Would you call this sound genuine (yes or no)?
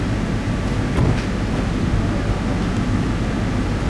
yes